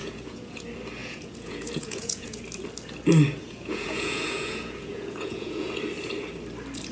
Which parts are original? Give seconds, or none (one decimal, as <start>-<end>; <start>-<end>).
0.6-1.0; 2.4-3.4; 5.7-6.9